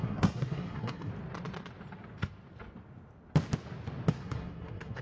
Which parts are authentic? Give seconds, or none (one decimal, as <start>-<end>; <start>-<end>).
1.1-4.1